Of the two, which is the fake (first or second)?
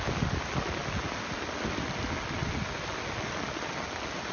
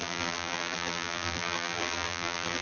second